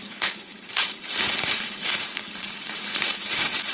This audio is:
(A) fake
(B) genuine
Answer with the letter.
A